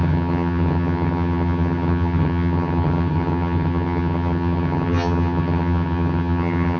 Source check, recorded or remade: remade